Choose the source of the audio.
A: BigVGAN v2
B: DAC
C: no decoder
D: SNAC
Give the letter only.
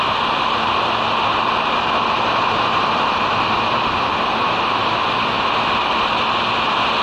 C